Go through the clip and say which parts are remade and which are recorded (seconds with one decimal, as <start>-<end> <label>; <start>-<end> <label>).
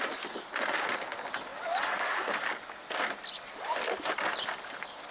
0.0-5.1 recorded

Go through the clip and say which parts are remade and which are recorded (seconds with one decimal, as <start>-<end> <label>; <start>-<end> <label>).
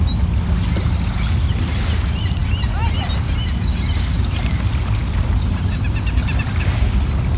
0.0-7.4 recorded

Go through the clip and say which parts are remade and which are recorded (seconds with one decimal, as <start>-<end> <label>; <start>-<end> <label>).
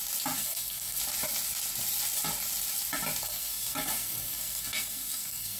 0.0-0.4 recorded; 0.4-1.0 remade; 1.0-3.2 recorded; 3.2-5.6 remade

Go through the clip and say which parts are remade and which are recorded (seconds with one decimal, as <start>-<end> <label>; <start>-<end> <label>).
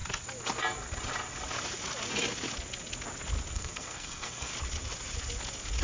0.0-3.5 recorded; 3.5-4.5 remade; 4.5-5.8 recorded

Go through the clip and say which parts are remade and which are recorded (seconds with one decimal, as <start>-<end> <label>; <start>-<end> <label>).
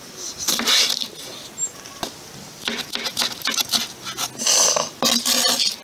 0.0-5.8 recorded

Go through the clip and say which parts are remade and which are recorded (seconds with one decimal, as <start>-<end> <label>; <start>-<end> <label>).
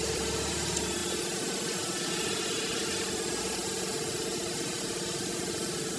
0.0-6.0 recorded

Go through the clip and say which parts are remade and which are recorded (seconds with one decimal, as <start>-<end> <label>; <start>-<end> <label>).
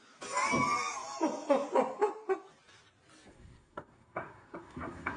0.0-3.3 recorded; 3.3-5.2 remade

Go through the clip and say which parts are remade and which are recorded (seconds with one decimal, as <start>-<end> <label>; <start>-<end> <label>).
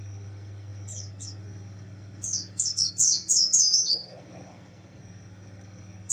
0.0-6.1 remade